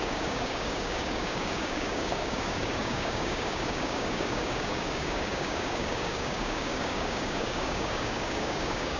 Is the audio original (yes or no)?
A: no